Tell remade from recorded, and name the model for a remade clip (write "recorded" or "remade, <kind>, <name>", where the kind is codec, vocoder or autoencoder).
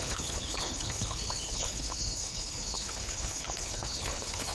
remade, codec, HILCodec